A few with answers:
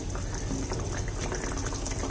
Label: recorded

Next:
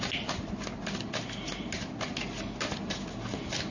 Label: recorded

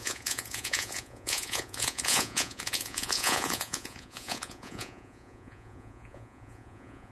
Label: remade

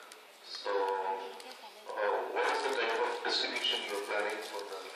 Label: recorded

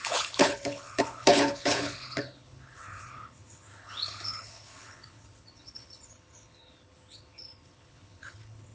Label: remade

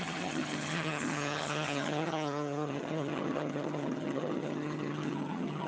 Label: remade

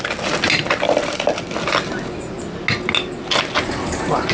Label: recorded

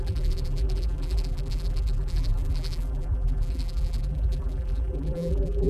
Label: remade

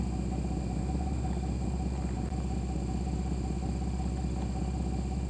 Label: recorded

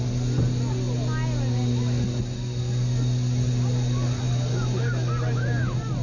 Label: recorded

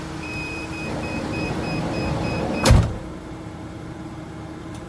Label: remade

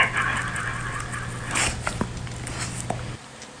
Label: recorded